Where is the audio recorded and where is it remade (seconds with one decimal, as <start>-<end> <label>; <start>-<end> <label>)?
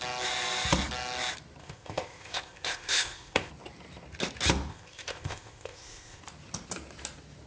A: 0.0-1.6 recorded; 1.6-3.5 remade; 3.5-4.7 recorded; 4.7-6.2 remade; 6.2-7.5 recorded